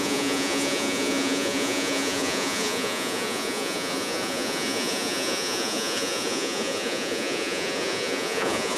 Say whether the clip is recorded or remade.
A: remade